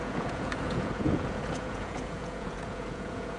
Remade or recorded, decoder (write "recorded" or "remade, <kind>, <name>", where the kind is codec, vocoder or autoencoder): remade, vocoder, Vocos